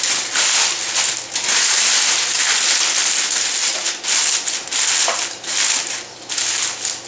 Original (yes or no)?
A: yes